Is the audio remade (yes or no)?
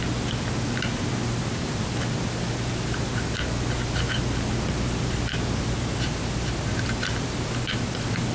no